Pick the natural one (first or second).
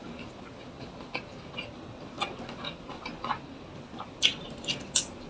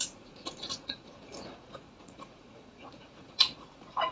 first